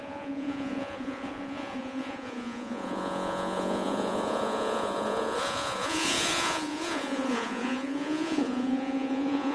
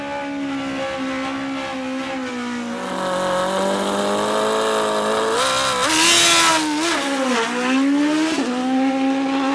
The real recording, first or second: second